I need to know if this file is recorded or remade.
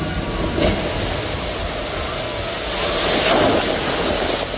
recorded